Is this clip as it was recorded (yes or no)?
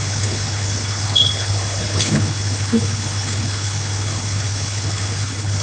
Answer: no